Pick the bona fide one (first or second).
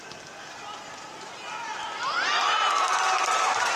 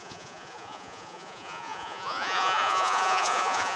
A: first